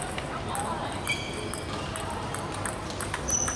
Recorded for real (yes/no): yes